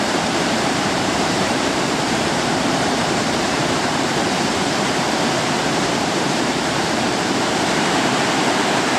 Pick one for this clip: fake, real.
fake